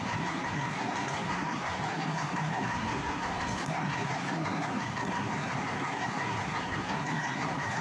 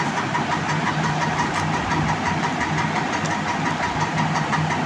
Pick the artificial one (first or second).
first